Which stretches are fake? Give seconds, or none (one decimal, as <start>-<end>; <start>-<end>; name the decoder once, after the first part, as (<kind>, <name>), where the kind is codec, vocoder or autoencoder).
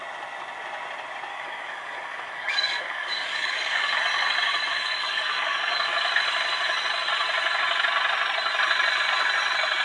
1.3-4.0 (codec, DAC); 4.7-6.1